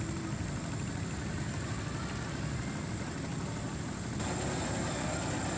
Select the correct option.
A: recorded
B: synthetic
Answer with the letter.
A